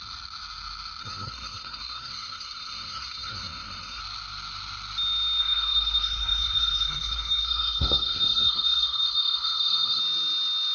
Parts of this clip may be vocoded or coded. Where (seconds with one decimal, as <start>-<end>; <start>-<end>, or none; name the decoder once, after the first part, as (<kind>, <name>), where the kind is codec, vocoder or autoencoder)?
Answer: 1.0-4.0 (codec, SNAC); 5.4-10.0